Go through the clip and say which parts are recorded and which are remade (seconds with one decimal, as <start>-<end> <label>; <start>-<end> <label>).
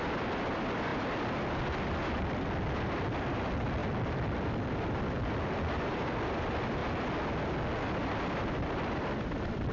0.0-6.8 remade; 6.8-7.8 recorded; 7.8-9.7 remade